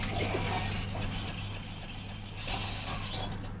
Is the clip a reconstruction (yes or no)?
no